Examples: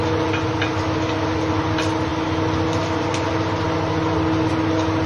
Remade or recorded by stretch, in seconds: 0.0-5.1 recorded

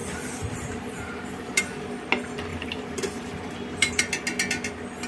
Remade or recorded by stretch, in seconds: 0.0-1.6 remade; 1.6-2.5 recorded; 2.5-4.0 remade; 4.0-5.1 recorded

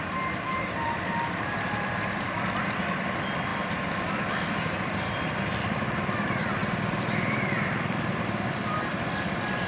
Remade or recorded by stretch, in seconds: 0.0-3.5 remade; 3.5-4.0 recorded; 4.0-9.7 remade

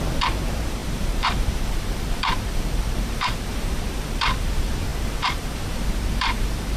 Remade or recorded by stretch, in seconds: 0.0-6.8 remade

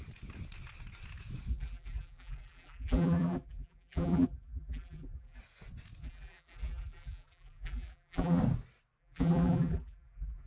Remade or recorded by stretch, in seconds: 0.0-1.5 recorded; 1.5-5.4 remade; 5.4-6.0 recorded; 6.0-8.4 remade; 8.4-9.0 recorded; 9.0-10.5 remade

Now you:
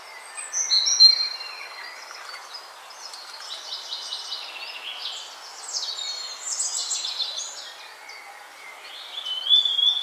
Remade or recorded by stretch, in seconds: 0.0-2.4 recorded; 2.4-4.2 remade; 4.2-6.8 recorded; 6.8-7.4 remade; 7.4-8.5 recorded; 8.5-9.4 remade; 9.4-10.0 recorded

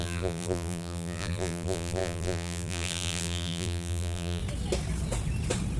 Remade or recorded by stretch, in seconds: 0.0-4.4 remade; 4.4-5.8 recorded